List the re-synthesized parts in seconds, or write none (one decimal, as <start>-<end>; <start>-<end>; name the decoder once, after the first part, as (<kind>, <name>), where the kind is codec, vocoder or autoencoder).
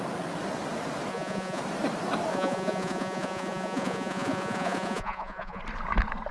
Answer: 1.1-1.6 (vocoder, Vocos); 2.3-5.6